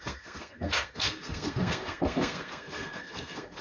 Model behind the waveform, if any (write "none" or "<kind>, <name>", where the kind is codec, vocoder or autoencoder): codec, SNAC